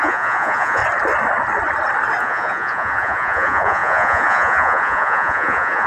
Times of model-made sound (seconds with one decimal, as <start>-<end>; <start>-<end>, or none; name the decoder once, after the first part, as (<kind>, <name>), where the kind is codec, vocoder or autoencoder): 0.0-0.8 (vocoder, Vocos); 2.2-5.9